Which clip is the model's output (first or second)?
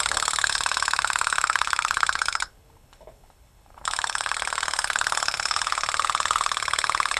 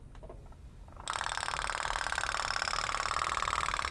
first